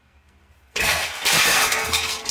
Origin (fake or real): fake